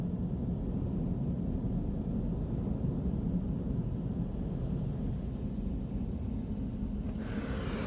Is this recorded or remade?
recorded